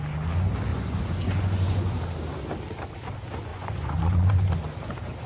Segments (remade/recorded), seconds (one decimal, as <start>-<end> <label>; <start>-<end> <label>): 0.0-0.7 recorded; 0.7-2.0 remade; 2.0-3.5 recorded; 3.5-4.5 remade; 4.5-5.3 recorded